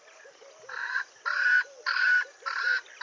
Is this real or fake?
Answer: real